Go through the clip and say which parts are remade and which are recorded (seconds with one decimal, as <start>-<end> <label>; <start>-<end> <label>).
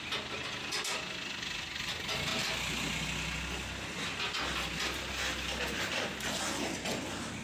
0.0-7.4 recorded